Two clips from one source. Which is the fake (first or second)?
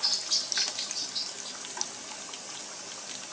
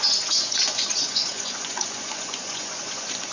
second